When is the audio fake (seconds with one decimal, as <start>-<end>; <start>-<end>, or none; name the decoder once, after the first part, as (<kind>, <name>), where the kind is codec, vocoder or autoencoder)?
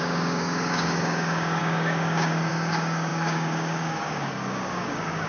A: 0.0-5.3 (codec, DAC)